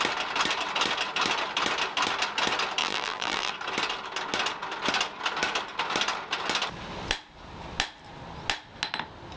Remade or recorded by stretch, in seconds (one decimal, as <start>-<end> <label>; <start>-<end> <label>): 0.0-2.8 recorded; 2.8-3.5 remade; 3.5-9.4 recorded